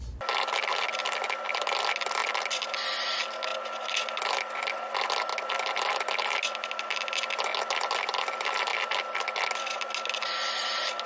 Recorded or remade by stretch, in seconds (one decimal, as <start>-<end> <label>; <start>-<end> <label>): 0.0-11.1 recorded